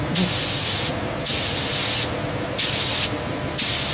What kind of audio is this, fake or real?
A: real